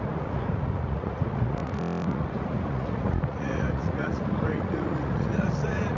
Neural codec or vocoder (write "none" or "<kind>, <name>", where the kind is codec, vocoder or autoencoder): vocoder, Vocos